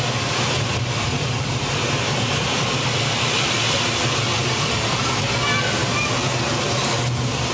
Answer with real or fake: real